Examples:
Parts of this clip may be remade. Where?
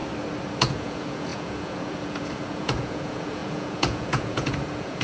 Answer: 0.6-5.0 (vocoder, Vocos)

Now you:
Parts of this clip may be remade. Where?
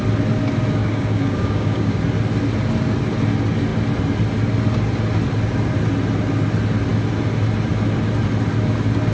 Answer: 0.8-2.0 (codec, DAC)